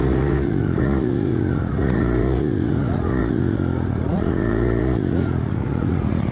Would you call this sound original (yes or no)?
no